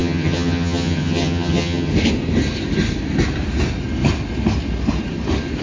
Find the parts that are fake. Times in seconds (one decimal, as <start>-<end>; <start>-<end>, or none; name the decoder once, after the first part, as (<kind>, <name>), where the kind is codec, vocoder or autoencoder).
0.0-1.9 (vocoder, HiFi-GAN)

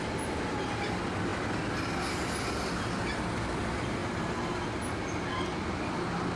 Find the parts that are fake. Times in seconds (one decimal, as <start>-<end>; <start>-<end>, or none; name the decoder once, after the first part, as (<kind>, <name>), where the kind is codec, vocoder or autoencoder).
none

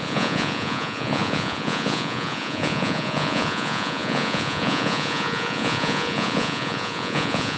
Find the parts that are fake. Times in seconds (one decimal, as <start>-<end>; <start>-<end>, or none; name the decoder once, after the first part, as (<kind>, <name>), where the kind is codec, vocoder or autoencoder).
0.0-7.6 (vocoder, Vocos)